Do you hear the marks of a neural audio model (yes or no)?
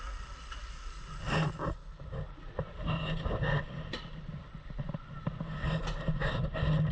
no